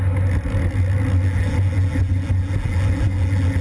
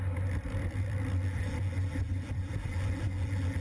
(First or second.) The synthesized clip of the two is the second